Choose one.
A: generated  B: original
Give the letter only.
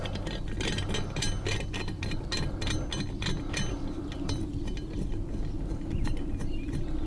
B